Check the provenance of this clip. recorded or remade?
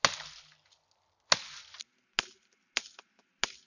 recorded